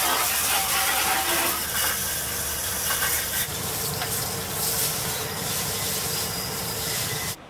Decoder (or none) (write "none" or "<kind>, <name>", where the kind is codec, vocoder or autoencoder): vocoder, BigVGAN v2